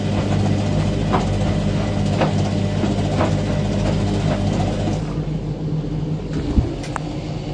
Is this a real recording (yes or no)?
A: yes